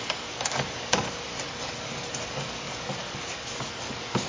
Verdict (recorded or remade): remade